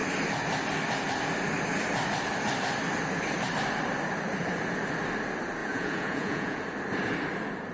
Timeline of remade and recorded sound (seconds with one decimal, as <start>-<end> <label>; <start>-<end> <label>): 0.0-5.6 recorded; 5.6-6.6 remade; 6.6-7.7 recorded